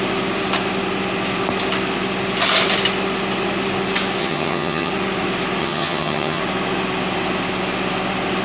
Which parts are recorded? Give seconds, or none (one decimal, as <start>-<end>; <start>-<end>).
0.0-4.2; 4.9-5.6; 6.4-8.4